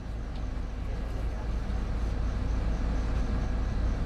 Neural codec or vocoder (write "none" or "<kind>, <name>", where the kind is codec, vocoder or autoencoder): none